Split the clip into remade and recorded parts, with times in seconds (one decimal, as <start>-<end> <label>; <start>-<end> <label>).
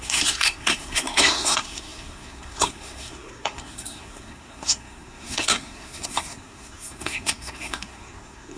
0.0-8.6 remade